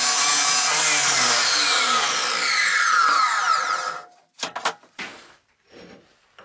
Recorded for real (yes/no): yes